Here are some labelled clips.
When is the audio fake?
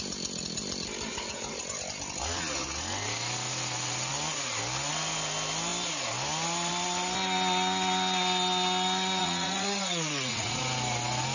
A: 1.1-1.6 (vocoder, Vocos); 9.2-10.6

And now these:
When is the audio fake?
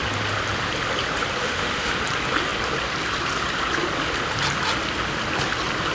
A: 1.4-1.9 (autoencoder, DAC-VAE)